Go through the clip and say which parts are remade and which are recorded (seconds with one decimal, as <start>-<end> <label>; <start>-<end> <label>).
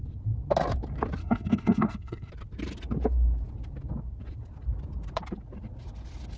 0.0-1.2 recorded; 1.2-2.3 remade; 2.3-6.4 recorded